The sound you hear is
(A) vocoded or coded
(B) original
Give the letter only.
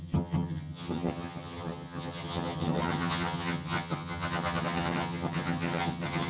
A